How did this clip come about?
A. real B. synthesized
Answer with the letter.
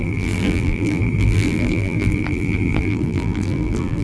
B